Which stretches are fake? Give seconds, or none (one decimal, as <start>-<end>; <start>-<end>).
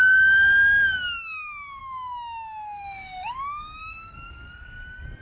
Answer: 1.8-4.5